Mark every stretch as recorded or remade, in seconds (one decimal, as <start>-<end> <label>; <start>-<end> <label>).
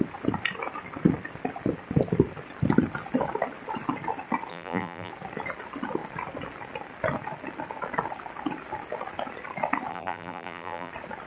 0.0-4.5 recorded; 4.5-5.1 remade; 5.1-9.9 recorded; 9.9-10.9 remade; 10.9-11.3 recorded